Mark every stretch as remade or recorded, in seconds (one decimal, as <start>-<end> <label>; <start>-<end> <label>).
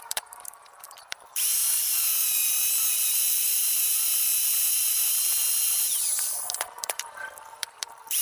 0.0-1.6 remade; 1.6-3.3 recorded; 3.3-4.3 remade; 4.3-5.8 recorded; 5.8-8.2 remade